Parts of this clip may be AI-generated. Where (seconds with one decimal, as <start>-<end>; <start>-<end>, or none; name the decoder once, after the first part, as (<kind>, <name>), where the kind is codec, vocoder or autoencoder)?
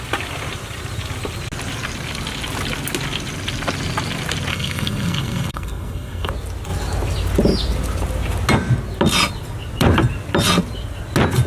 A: 4.5-6.3 (codec, SNAC)